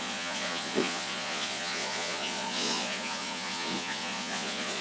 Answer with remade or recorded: remade